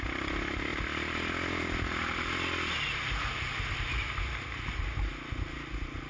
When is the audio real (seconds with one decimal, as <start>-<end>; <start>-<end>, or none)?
0.0-6.1